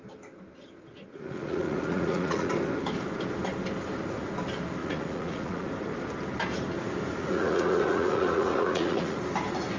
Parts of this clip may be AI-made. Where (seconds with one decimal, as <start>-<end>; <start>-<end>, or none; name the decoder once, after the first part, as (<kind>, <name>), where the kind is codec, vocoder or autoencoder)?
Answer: 1.1-2.5 (vocoder, Vocos); 4.8-5.7; 7.2-9.2